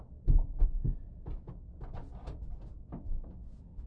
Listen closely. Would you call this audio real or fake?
real